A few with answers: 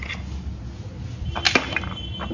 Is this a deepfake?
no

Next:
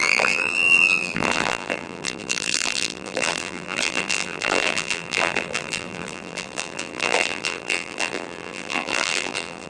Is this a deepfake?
yes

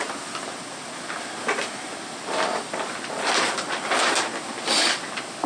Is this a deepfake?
no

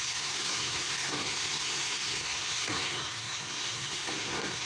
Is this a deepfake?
yes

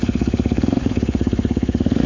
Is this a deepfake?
yes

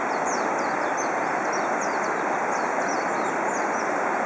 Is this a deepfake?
no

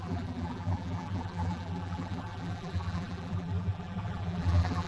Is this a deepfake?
yes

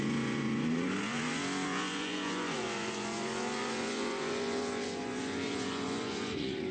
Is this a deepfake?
yes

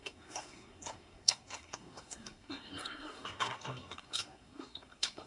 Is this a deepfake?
yes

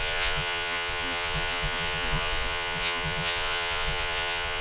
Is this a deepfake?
yes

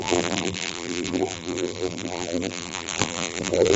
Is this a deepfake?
yes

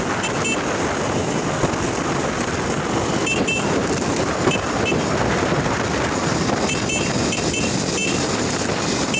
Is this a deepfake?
no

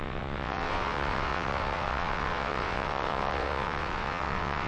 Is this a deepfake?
yes